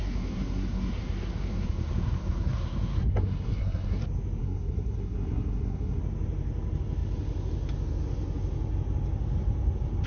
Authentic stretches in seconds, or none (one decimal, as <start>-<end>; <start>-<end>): 4.0-4.4; 6.0-10.1